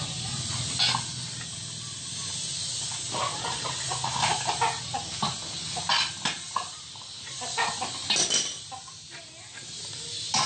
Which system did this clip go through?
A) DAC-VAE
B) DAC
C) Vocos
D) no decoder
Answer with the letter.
D